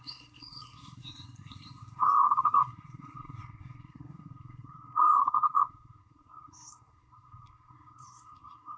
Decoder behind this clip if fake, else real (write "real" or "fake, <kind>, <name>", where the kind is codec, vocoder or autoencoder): fake, codec, SNAC